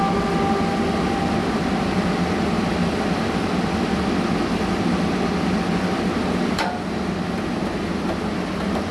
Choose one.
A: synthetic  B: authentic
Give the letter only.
B